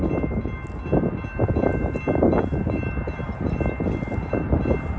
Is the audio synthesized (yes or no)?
no